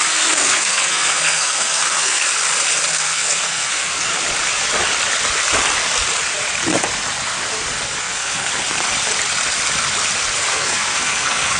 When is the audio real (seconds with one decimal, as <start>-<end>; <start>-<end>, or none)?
2.2-2.9; 4.1-8.0; 8.5-10.5